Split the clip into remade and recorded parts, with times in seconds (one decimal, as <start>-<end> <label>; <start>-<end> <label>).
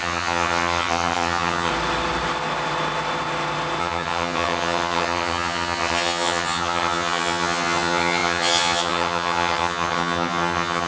0.0-1.7 remade; 1.7-3.8 recorded; 3.8-10.9 remade